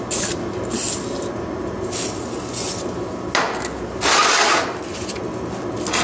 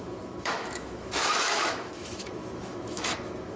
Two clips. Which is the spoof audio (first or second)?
second